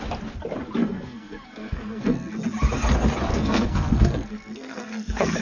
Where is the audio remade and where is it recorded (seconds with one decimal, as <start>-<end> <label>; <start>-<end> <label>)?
0.0-0.8 recorded; 0.8-2.3 remade; 2.3-3.3 recorded; 3.3-5.4 remade